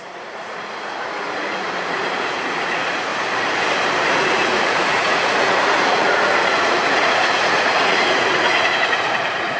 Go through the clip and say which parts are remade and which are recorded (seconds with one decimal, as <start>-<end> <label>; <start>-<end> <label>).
0.0-3.1 remade; 3.1-4.0 recorded; 4.0-9.6 remade